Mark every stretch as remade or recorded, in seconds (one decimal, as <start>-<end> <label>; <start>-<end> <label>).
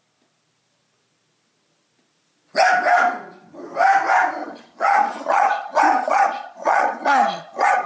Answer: 0.0-4.4 recorded; 4.4-7.9 remade